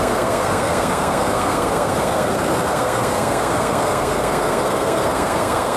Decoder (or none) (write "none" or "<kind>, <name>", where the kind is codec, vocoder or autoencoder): codec, SNAC